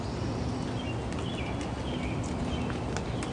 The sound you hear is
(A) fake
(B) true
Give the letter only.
B